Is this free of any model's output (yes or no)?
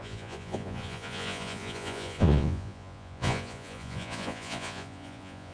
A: no